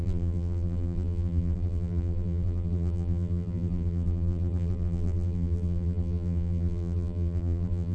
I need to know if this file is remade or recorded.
remade